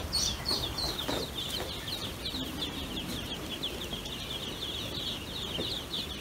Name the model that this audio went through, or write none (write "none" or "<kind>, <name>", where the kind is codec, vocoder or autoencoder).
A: none